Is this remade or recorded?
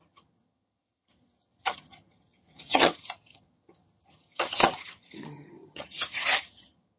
remade